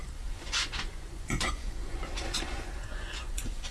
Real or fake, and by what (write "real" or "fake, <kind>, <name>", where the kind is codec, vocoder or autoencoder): fake, vocoder, Vocos